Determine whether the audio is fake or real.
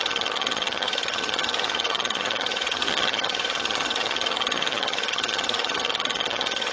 fake